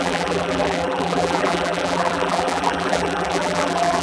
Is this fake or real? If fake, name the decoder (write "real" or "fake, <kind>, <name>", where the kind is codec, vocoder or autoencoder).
fake, vocoder, BigVGAN v2